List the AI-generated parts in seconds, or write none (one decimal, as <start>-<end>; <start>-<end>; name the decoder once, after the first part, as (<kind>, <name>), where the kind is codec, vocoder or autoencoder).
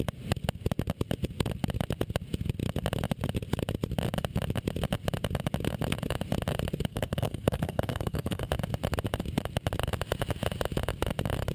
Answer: 6.9-8.5 (codec, SNAC)